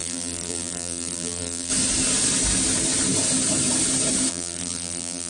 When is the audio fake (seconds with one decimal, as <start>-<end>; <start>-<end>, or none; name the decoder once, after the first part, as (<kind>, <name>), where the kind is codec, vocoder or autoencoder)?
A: 0.0-1.7 (vocoder, BigVGAN v2); 4.3-5.3